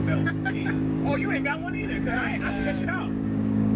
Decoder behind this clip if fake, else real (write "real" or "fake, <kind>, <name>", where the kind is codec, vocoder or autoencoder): fake, codec, DAC